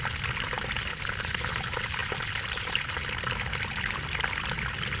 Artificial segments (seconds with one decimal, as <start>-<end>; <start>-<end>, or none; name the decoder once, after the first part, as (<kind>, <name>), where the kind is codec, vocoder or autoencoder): 0.9-1.5 (codec, HILCodec)